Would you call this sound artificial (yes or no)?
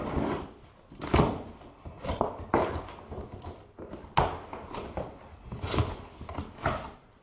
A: no